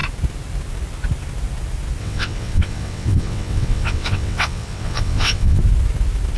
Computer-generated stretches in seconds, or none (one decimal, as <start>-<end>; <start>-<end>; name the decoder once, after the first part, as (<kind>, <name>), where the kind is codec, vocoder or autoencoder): 2.0-5.6 (vocoder, WaveNeXt)